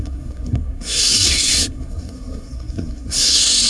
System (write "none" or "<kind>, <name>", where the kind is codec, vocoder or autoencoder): codec, SNAC